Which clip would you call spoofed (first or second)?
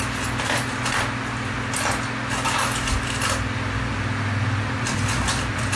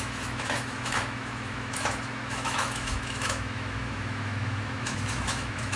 second